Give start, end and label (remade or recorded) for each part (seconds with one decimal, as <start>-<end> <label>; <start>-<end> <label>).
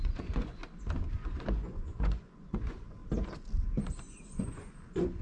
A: 0.0-0.6 remade; 0.6-1.1 recorded; 1.1-3.0 remade; 3.0-3.8 recorded; 3.8-5.2 remade